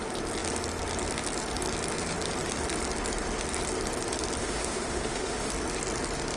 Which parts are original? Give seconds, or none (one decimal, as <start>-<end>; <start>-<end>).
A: 0.0-4.4; 5.5-6.4